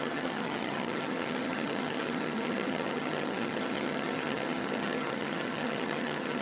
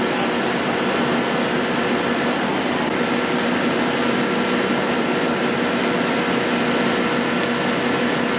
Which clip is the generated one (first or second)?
first